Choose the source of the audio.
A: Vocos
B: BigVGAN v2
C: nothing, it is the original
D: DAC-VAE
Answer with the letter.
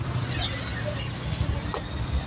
C